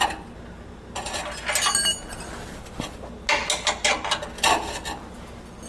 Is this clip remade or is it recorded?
recorded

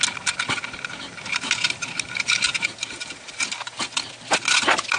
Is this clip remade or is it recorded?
recorded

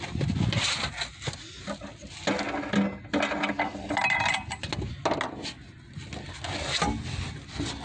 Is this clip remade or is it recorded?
recorded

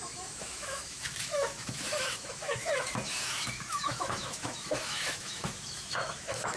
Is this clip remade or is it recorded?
remade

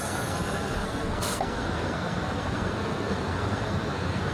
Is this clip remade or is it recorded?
remade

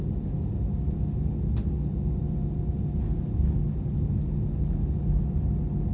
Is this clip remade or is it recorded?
recorded